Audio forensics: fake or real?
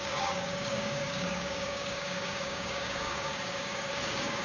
fake